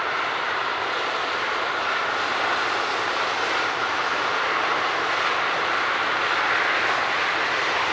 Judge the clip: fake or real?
real